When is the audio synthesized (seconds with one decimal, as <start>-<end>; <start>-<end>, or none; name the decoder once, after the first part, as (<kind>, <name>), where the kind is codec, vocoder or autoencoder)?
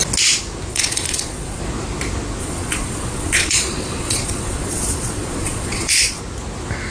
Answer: 0.7-1.6 (vocoder, Vocos); 2.4-6.2